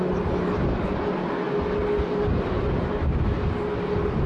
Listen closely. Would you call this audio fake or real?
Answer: real